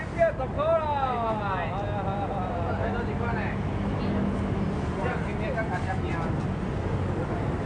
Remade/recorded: recorded